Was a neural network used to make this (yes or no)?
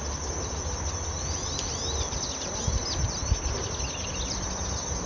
no